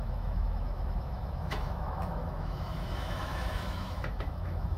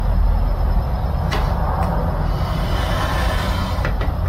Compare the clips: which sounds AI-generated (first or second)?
first